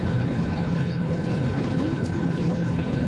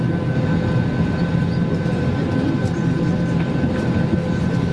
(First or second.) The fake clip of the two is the first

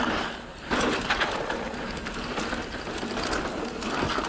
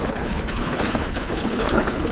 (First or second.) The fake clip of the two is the second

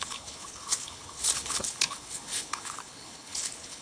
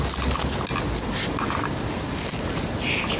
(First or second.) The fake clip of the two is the first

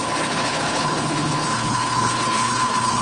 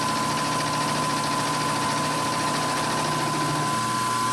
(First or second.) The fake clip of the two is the first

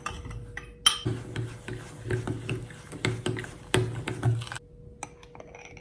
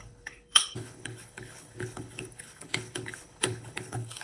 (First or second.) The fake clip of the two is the second